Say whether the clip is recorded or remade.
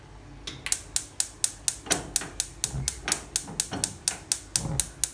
recorded